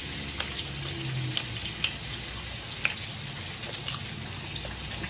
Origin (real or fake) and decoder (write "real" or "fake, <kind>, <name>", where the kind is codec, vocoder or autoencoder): real